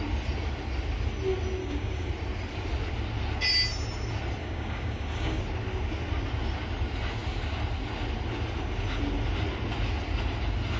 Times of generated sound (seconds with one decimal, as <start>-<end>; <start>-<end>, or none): 1.6-2.1; 4.4-5.4